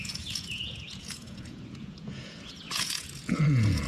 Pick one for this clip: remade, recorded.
remade